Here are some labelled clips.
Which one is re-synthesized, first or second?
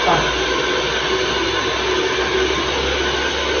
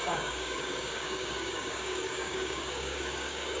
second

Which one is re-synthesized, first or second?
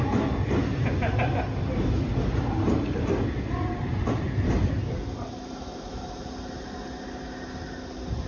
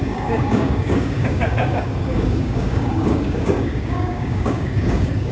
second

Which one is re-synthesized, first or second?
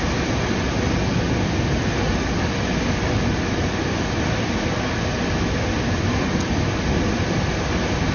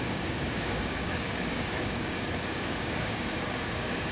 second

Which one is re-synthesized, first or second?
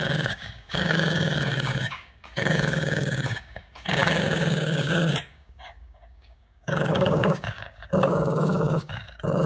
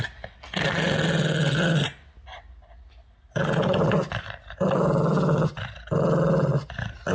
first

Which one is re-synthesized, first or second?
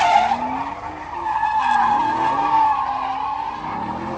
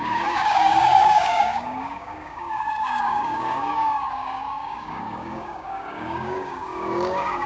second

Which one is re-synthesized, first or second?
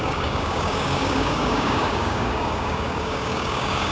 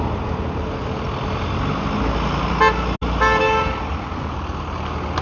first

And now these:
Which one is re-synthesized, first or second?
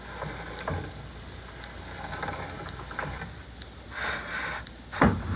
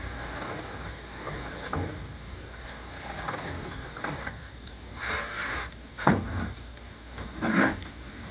second